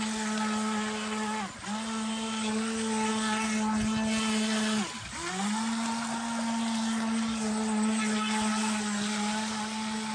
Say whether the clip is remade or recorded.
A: recorded